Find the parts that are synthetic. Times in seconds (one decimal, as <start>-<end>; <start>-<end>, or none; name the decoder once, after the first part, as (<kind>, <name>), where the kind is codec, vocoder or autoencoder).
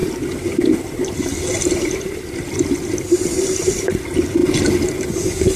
0.0-3.4 (vocoder, BigVGAN v2)